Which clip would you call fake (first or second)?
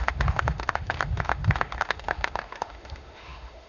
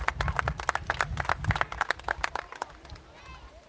first